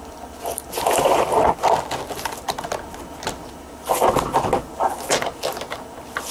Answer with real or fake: real